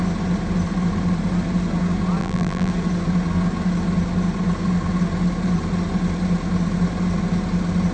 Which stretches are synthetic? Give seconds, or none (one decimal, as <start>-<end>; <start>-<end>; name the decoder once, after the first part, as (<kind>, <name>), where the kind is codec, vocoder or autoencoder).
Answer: 2.2-2.7 (vocoder, BigVGAN v2)